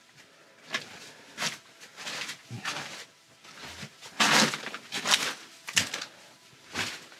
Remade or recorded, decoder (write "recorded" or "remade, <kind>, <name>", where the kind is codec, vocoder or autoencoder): recorded